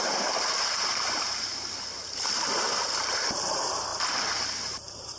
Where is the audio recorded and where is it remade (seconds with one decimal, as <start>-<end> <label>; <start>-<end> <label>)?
0.0-1.5 remade; 1.5-3.0 recorded; 3.0-3.9 remade; 3.9-4.5 recorded; 4.5-5.2 remade